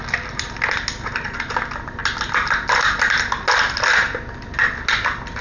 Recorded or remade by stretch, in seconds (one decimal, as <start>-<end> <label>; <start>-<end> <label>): 0.0-5.4 recorded